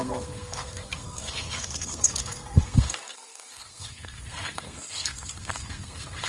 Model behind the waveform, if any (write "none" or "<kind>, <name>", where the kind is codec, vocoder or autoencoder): codec, SNAC